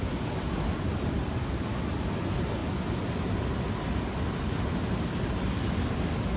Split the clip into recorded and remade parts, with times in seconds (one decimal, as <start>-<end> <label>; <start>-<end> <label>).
0.0-6.4 recorded